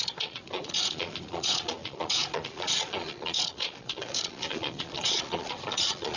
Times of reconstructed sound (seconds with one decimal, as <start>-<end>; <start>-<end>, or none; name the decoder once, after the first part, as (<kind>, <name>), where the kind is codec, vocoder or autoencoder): 0.0-6.2 (vocoder, Vocos)